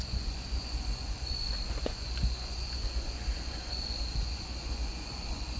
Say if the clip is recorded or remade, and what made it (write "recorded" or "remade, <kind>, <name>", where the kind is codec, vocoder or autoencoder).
remade, vocoder, Vocos